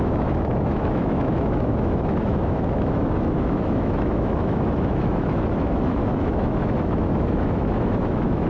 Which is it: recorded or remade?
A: remade